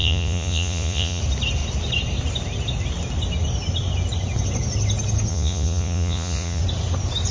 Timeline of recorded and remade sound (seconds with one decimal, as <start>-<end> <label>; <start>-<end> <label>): 0.0-1.2 remade; 1.2-5.3 recorded; 5.3-6.6 remade; 6.6-7.3 recorded